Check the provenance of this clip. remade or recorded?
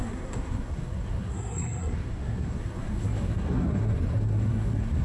remade